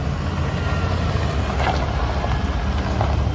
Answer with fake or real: real